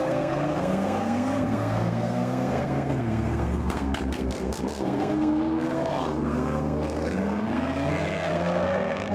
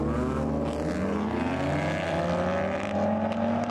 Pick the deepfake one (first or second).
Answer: first